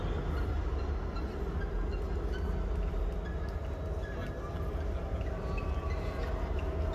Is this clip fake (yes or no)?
no